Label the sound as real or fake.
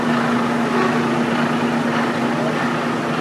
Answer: real